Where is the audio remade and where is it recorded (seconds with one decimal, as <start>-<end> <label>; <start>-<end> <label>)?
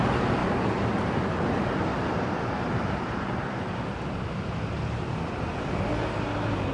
0.0-1.9 recorded; 1.9-2.9 remade; 2.9-6.7 recorded